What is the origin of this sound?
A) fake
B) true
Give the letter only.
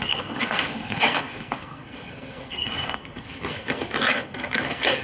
A